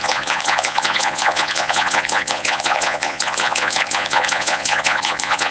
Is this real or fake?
fake